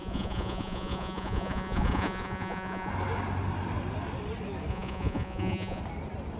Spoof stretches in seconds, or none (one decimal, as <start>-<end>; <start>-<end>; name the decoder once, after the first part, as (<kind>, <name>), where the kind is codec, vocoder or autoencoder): 0.0-2.9 (vocoder, Vocos); 4.7-5.8